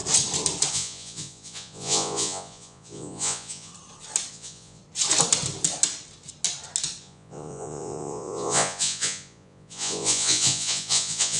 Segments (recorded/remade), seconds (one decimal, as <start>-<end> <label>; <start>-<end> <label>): 0.0-0.7 recorded; 0.7-3.7 remade; 3.7-4.3 recorded; 4.3-4.8 remade; 4.8-7.0 recorded; 7.0-11.4 remade